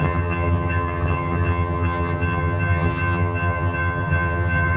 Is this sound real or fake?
fake